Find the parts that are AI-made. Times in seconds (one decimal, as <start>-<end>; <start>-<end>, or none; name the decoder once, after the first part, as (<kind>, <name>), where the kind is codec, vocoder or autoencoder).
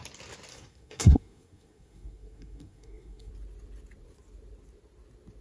0.5-3.3 (codec, SNAC)